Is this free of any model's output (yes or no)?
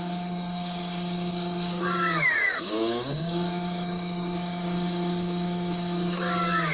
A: no